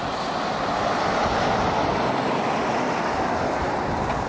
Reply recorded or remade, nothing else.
recorded